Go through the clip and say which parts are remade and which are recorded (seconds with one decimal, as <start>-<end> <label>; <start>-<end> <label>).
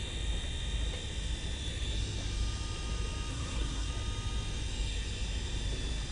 0.0-3.3 recorded; 3.3-3.9 remade; 3.9-6.1 recorded